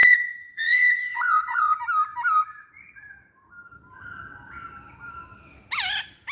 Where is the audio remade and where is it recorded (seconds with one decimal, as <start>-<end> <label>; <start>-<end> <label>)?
0.0-1.8 remade; 1.8-6.3 recorded